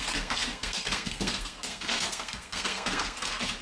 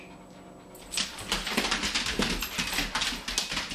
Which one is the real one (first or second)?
second